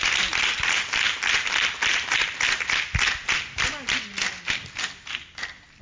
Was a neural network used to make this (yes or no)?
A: no